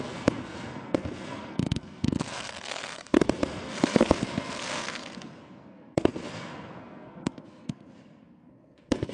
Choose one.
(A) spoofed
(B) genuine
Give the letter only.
A